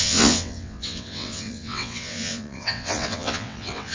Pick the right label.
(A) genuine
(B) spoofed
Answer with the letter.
B